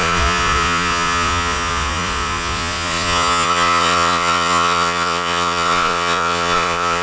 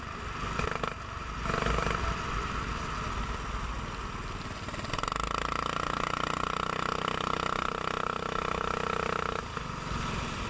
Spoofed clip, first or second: first